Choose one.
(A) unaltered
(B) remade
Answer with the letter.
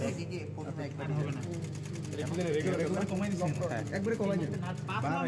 A